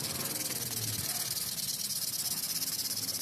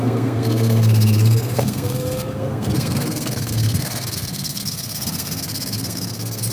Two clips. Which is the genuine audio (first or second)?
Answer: first